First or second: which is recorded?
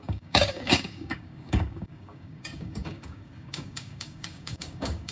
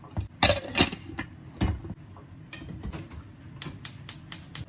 second